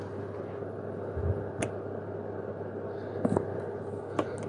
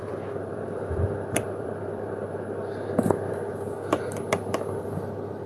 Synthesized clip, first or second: second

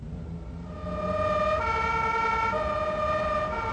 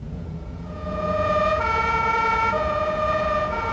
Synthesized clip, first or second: second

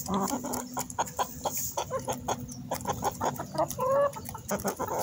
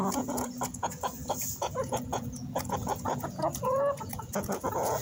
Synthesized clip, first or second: second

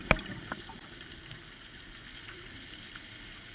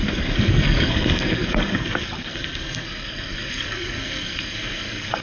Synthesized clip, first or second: second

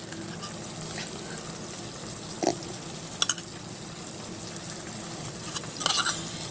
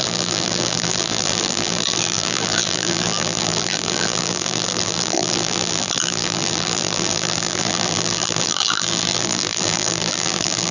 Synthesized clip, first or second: second